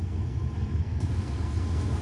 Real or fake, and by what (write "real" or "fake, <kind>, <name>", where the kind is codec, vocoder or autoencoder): fake, codec, SNAC